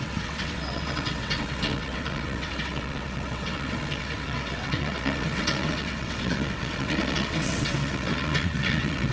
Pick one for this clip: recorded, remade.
remade